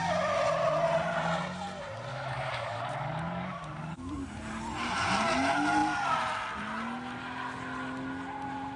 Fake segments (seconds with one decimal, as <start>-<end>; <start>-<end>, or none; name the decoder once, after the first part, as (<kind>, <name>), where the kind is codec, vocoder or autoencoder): 2.1-4.1 (codec, DAC)